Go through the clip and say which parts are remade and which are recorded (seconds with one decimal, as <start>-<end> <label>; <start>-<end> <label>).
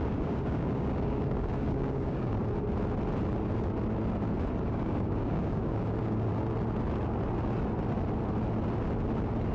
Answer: 0.0-2.4 remade; 2.4-4.6 recorded; 4.6-6.3 remade; 6.3-9.5 recorded